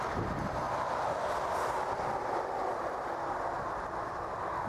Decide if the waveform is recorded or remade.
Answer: recorded